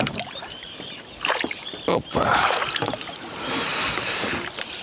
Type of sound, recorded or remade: remade